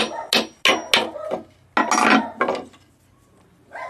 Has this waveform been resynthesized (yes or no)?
no